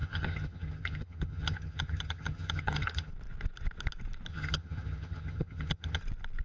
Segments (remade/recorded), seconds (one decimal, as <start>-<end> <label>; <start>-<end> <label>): 0.0-3.1 remade; 3.1-4.3 recorded; 4.3-6.0 remade; 6.0-6.4 recorded